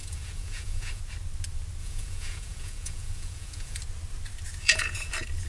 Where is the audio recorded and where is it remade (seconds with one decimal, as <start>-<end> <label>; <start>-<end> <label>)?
0.0-1.0 remade; 1.0-1.8 recorded; 1.8-3.8 remade; 3.8-4.6 recorded; 4.6-5.1 remade; 5.1-5.5 recorded